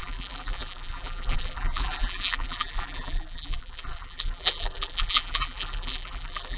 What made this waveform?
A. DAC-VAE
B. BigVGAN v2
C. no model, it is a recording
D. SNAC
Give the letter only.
B